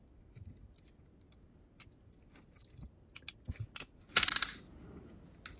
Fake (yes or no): no